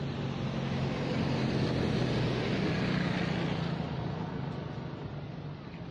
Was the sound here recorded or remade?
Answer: recorded